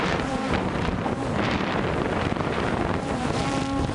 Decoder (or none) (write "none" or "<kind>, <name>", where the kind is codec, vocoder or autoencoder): vocoder, BigVGAN v2